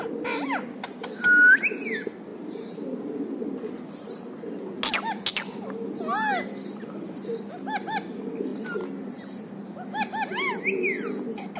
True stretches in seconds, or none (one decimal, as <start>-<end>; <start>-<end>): 0.0-11.6